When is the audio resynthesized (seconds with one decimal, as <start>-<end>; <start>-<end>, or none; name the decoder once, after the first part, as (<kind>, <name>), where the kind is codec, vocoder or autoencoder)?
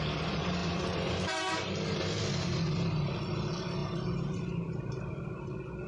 3.8-5.4 (vocoder, BigVGAN v2)